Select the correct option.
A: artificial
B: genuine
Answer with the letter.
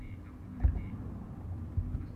A